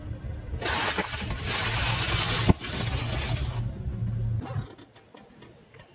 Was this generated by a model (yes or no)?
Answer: no